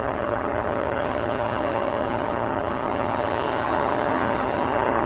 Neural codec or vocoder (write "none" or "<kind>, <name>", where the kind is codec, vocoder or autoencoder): vocoder, HiFi-GAN